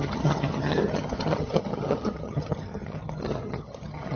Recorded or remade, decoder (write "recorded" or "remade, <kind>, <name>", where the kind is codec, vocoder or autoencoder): remade, vocoder, HiFi-GAN